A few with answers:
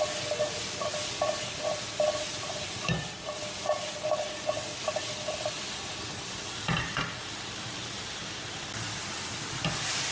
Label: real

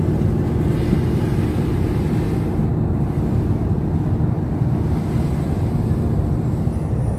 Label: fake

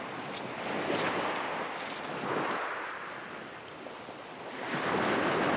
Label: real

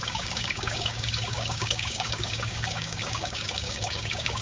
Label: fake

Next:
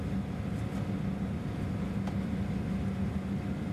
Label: real